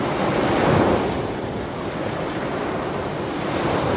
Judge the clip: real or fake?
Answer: real